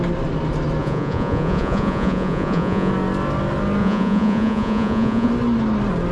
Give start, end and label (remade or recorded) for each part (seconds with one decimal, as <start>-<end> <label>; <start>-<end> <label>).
0.0-0.8 recorded; 0.8-2.9 remade; 2.9-3.8 recorded; 3.8-5.3 remade; 5.3-6.1 recorded